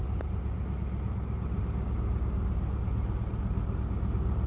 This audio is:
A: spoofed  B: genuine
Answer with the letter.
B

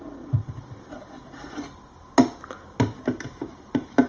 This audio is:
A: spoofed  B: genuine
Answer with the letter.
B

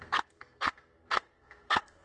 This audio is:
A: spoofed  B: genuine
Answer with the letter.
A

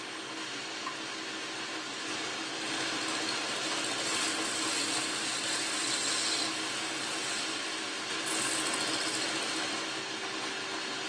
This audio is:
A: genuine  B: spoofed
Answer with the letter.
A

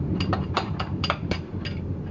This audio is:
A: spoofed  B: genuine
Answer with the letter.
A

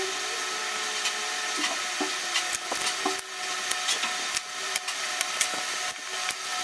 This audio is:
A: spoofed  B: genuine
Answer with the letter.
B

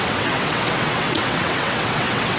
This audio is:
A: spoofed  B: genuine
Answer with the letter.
A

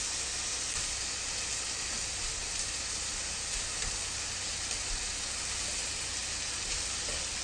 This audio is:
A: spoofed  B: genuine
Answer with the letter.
B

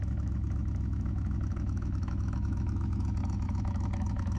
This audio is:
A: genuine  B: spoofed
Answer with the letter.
B